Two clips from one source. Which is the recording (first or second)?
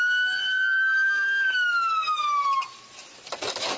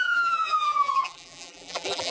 first